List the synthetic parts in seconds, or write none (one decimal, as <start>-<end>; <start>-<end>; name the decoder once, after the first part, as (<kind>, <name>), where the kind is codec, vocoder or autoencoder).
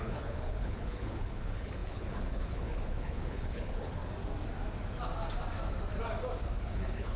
0.0-4.0 (codec, HILCodec); 6.6-7.2